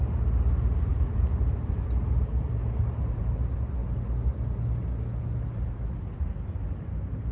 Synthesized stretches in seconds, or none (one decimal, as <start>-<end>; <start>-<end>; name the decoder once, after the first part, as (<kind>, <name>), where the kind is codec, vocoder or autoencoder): none